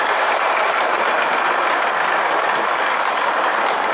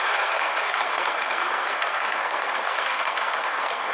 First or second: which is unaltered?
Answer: first